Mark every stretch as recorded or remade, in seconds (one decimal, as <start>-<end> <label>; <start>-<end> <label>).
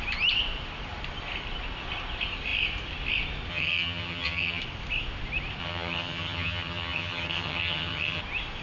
0.0-3.5 recorded; 3.5-4.6 remade; 4.6-5.6 recorded; 5.6-8.2 remade; 8.2-8.6 recorded